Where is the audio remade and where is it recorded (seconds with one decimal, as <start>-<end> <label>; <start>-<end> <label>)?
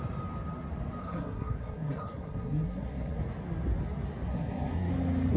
0.0-1.0 recorded; 1.0-3.2 remade; 3.2-4.3 recorded; 4.3-4.9 remade; 4.9-5.4 recorded